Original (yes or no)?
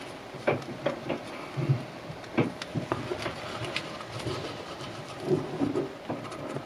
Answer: yes